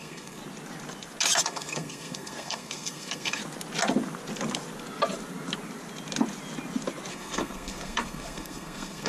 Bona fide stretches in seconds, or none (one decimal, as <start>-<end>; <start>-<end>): 0.4-1.4; 3.4-7.1